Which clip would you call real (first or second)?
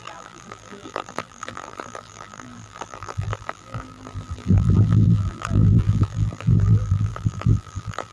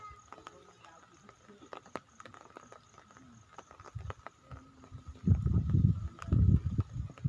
second